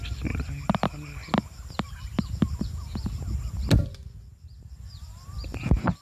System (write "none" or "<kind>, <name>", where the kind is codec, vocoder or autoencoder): none